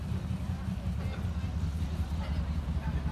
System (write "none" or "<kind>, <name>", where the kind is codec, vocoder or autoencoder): none